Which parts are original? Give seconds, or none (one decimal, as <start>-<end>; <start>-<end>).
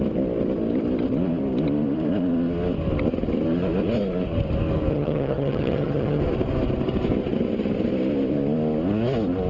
0.0-4.9; 6.2-9.5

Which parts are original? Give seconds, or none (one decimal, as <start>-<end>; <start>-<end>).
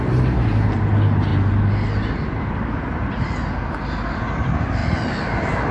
0.0-5.7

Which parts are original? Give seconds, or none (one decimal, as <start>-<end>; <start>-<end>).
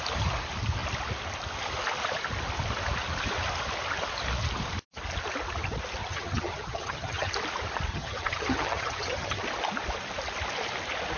0.0-6.0; 7.3-7.9; 9.4-11.2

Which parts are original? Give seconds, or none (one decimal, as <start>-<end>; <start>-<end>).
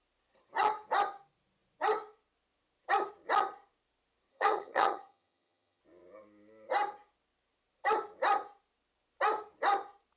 0.0-4.3; 5.8-10.2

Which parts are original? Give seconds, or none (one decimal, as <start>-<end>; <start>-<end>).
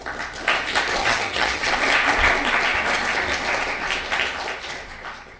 0.0-1.0; 1.7-5.4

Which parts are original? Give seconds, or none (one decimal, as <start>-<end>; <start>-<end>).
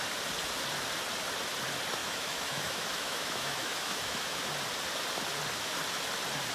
0.0-2.0; 4.5-6.5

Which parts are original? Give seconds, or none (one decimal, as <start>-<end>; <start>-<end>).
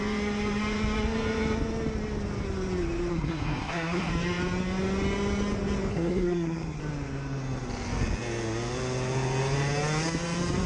0.0-3.1; 4.1-5.9; 6.8-10.7